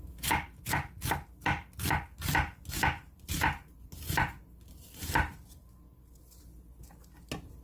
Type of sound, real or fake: real